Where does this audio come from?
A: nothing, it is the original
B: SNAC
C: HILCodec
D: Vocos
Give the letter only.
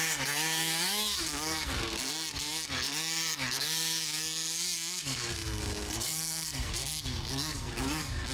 B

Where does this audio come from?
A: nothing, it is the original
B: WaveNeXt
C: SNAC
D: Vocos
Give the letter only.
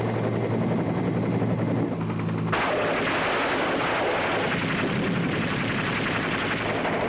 A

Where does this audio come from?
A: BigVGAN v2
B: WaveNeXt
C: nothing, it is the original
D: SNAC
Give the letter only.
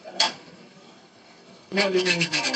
D